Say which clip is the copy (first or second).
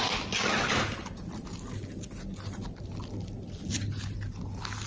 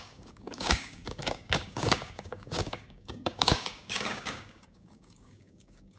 second